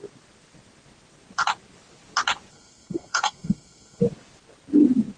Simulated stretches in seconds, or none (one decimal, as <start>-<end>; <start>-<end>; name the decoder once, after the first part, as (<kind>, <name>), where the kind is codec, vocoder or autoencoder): 2.5-4.0 (codec, SNAC)